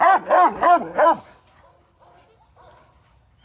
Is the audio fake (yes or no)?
no